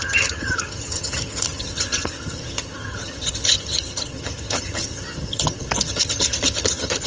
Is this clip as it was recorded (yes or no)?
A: no